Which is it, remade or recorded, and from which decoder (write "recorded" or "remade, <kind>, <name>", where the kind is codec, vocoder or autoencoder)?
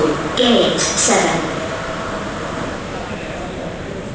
remade, vocoder, BigVGAN v2